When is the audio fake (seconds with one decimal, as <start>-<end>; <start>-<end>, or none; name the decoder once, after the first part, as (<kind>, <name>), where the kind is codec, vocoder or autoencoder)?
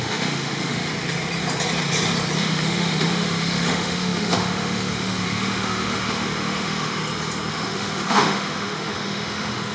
0.0-0.9 (autoencoder, DAC-VAE); 2.4-7.0; 7.5-9.7